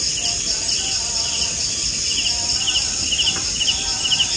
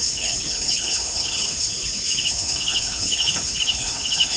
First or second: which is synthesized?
second